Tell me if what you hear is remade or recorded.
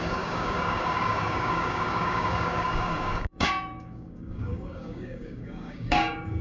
remade